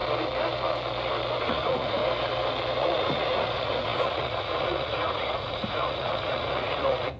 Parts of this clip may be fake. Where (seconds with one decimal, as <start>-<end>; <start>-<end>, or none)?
1.4-2.0; 2.8-7.2